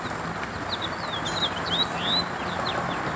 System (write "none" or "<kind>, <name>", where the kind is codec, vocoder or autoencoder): none